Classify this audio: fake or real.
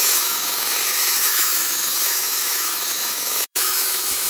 fake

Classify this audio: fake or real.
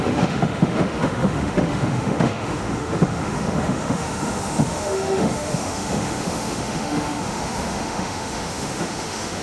fake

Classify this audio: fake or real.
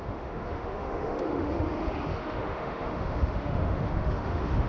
fake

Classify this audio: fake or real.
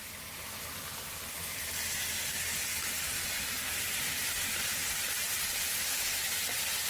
real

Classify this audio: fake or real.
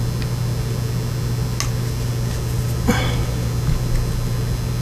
real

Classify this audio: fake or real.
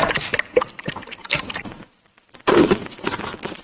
real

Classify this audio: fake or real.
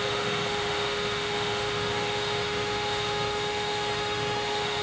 fake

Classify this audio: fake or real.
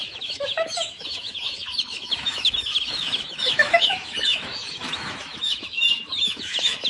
fake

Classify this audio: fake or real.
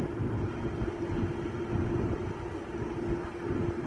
real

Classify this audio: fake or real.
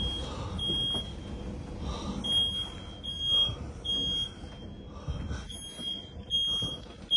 real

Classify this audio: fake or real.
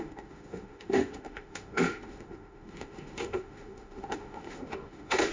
fake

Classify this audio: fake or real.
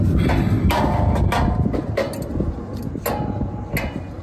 real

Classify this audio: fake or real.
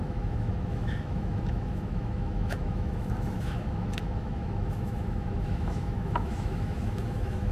fake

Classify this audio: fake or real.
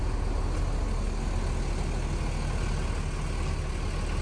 real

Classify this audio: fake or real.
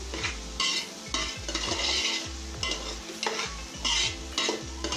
real